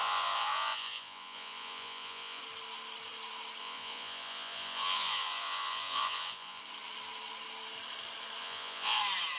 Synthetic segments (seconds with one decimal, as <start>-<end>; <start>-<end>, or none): 0.0-2.4; 3.6-6.6; 8.4-9.0